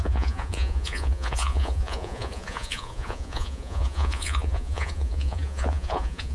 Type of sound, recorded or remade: remade